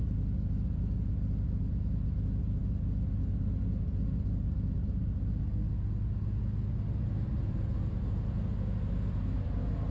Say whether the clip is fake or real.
real